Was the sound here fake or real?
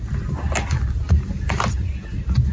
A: real